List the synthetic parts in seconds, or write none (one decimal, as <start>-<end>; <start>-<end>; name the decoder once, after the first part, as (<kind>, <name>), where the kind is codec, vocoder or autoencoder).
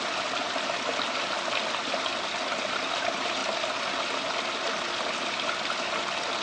none